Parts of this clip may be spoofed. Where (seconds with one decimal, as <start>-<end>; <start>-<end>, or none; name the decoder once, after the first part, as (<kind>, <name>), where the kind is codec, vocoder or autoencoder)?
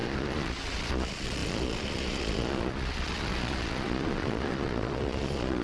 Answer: 0.0-5.6 (vocoder, Vocos)